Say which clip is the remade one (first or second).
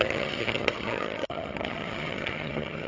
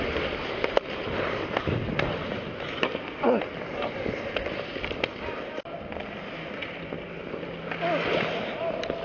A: first